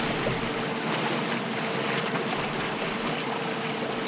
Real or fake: real